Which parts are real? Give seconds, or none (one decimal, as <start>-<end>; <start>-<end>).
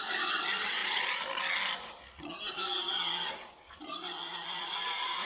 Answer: 0.8-3.5